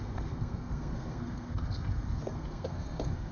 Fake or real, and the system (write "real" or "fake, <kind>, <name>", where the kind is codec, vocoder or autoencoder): fake, codec, SNAC